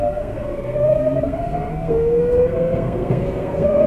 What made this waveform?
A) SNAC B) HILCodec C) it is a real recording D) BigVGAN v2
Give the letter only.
A